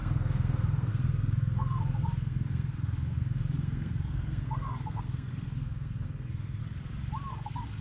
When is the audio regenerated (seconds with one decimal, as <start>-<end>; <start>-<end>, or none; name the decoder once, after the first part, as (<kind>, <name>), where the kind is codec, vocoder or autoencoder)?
0.0-6.6 (codec, SNAC); 7.3-7.8